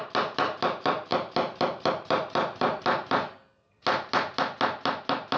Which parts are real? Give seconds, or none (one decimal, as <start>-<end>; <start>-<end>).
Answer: 0.0-5.4